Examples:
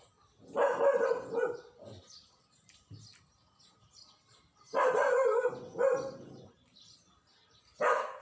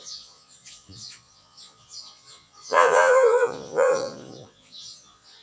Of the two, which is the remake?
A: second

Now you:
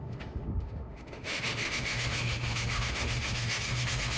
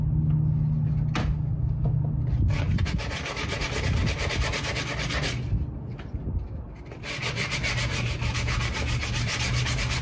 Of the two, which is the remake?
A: first